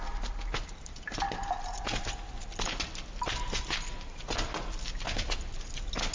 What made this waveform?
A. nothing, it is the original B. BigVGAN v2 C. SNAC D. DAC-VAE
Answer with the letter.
A